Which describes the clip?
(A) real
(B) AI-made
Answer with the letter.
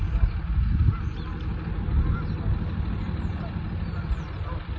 A